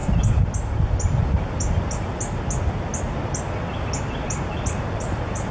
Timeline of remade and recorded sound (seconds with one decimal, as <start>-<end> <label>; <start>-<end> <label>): 0.0-5.5 recorded